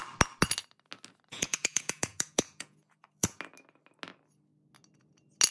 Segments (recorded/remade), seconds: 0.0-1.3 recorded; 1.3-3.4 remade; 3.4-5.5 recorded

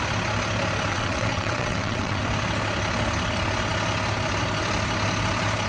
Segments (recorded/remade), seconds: 0.0-0.9 recorded; 0.9-2.2 remade; 2.2-5.7 recorded